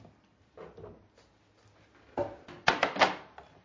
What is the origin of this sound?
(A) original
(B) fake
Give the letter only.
A